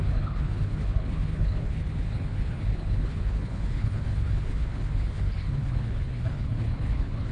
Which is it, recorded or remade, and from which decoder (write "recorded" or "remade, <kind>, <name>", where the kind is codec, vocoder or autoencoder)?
remade, codec, HILCodec